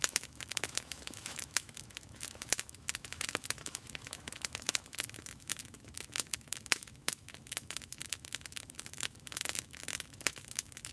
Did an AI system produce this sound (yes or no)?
yes